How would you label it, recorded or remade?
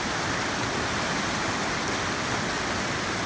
recorded